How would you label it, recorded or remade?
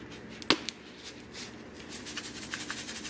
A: recorded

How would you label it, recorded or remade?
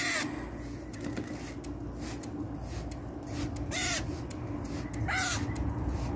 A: recorded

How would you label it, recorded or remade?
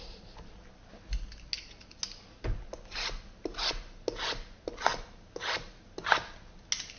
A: recorded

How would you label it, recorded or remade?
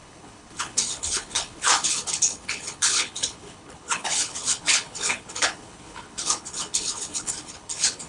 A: remade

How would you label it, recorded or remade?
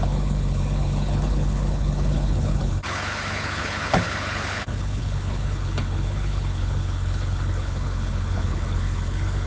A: remade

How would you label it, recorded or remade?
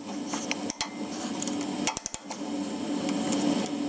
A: recorded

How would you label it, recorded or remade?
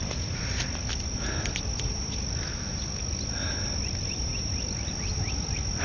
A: recorded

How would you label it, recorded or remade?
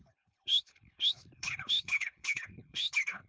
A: remade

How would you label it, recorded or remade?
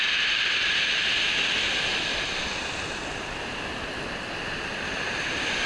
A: recorded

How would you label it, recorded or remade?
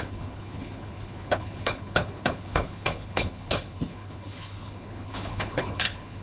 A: remade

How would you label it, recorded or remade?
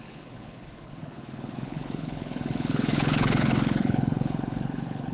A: remade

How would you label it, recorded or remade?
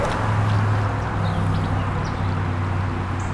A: recorded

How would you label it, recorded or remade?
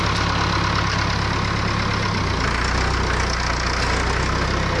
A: recorded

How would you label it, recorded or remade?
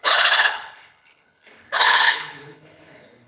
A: remade